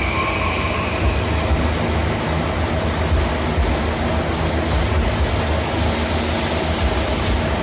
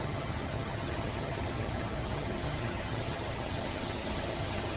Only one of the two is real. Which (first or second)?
first